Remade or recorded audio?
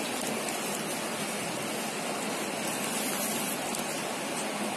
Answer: recorded